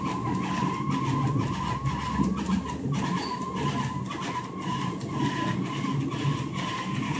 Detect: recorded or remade recorded